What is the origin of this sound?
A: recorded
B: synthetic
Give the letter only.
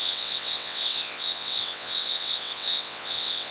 B